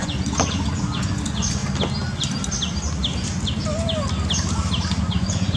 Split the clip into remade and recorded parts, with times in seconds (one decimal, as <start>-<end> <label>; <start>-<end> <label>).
0.0-1.6 remade; 1.6-5.0 recorded; 5.0-5.6 remade